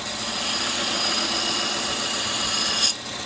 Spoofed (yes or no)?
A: no